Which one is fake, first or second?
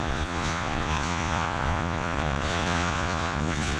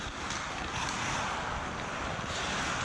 first